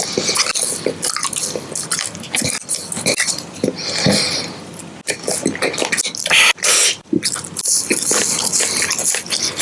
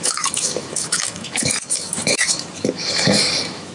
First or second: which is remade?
second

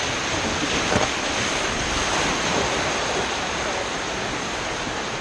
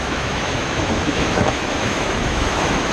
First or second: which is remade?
second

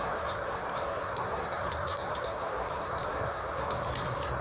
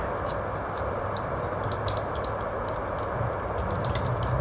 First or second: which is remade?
first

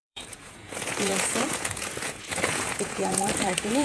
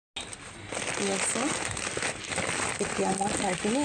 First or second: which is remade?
first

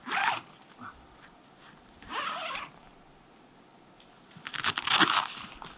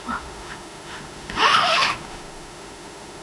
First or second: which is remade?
second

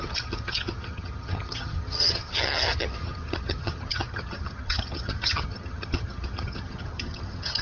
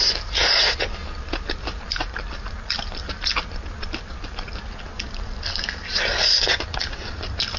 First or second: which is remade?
first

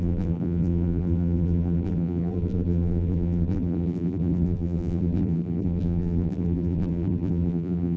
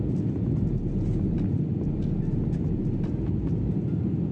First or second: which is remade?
first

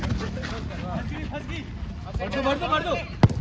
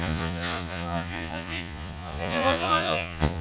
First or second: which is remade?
second